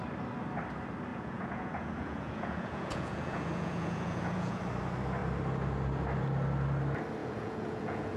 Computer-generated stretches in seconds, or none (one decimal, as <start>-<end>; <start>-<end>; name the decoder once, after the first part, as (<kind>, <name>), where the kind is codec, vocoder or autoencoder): 1.1-4.6 (vocoder, Vocos); 7.2-8.2